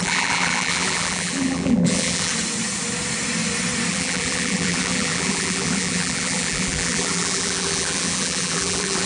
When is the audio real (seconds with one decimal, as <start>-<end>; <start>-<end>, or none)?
2.3-3.9